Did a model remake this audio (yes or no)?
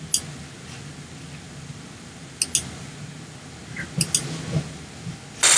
no